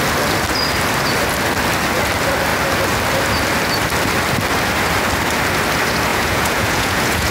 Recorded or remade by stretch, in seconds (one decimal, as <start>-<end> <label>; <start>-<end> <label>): 0.0-6.1 recorded; 6.1-7.3 remade